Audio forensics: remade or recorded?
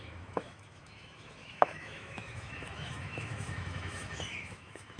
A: remade